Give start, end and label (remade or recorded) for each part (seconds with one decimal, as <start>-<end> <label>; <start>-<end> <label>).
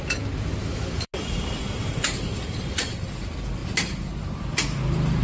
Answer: 0.0-0.6 recorded; 0.6-1.1 remade; 1.1-5.2 recorded